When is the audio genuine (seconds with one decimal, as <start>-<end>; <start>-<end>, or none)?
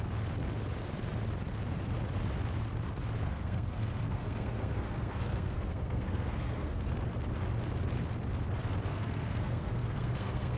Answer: 0.0-3.2; 6.9-8.9